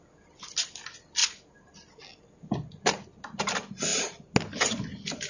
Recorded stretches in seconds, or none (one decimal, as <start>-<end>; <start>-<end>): 0.0-5.3